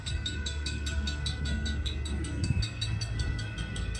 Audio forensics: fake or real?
fake